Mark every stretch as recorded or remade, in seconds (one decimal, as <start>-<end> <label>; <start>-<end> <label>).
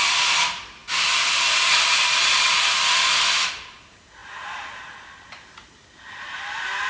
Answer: 0.0-6.9 recorded